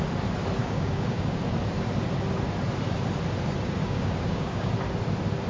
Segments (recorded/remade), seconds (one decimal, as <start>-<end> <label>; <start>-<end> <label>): 0.0-0.6 recorded; 0.6-1.4 remade; 1.4-3.8 recorded; 3.8-4.7 remade; 4.7-5.5 recorded